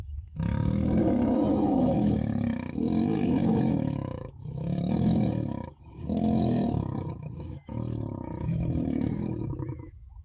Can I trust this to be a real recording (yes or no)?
no